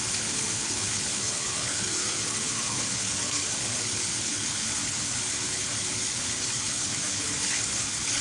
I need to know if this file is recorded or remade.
remade